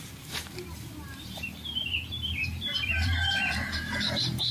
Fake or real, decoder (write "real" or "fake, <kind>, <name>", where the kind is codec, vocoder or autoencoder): fake, vocoder, BigVGAN v2